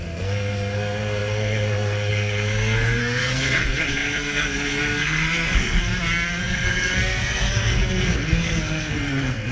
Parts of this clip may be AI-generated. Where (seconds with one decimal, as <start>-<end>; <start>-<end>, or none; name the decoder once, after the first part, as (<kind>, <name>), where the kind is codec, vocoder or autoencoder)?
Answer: 0.0-5.9 (codec, SNAC); 6.4-9.5